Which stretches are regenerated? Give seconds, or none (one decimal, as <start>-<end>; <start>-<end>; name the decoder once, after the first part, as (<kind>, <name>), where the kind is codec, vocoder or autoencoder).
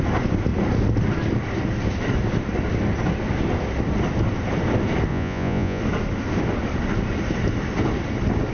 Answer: 5.1-5.8 (vocoder, Vocos)